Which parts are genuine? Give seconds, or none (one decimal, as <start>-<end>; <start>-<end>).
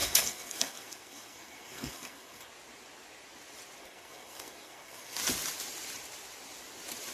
2.5-3.8; 5.2-7.1